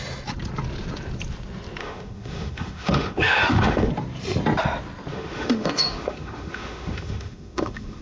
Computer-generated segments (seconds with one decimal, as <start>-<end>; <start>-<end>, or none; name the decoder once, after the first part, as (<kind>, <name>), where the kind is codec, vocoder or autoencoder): 1.8-3.9 (autoencoder, DAC-VAE); 5.1-8.0